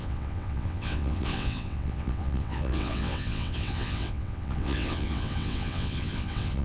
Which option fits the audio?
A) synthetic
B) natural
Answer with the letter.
A